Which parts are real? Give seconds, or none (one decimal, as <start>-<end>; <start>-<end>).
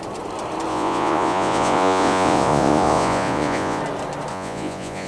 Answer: 0.0-0.7; 3.8-4.3